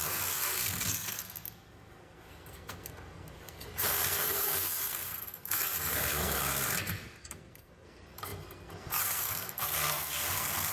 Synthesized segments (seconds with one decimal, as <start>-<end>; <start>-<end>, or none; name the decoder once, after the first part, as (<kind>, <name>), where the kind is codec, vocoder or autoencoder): 0.0-10.7 (codec, SNAC)